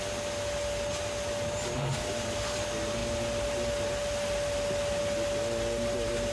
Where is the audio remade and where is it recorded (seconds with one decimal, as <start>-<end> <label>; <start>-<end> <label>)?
0.0-6.3 recorded